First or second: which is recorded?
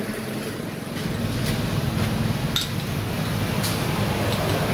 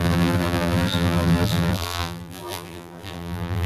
first